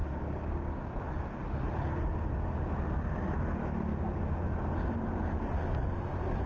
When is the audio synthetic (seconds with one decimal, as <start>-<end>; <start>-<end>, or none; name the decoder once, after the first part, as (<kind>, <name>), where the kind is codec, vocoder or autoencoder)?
0.0-0.8 (codec, DAC)